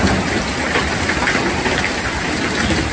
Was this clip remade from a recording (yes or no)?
no